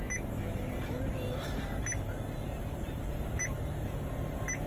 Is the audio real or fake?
real